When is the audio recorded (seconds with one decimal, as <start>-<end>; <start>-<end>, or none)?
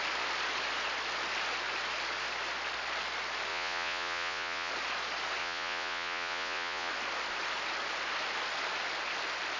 0.0-3.5; 4.7-5.4; 6.9-9.6